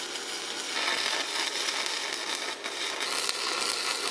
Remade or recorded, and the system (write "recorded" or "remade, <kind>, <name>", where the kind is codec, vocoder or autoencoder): recorded